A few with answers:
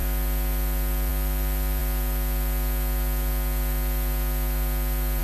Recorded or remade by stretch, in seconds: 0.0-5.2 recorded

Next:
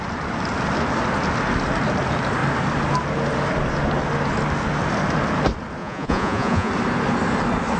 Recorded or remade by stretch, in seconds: 0.0-5.8 recorded; 5.8-6.7 remade; 6.7-7.8 recorded

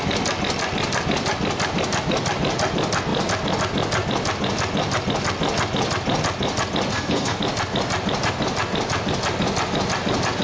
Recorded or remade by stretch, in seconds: 0.0-6.9 recorded; 6.9-7.4 remade; 7.4-10.4 recorded

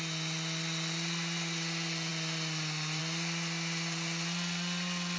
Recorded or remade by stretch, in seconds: 0.0-5.2 recorded

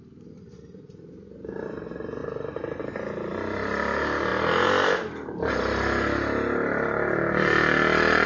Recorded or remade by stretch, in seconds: 0.0-2.2 recorded; 2.2-2.8 remade; 2.8-4.3 recorded; 4.3-5.5 remade; 5.5-8.3 recorded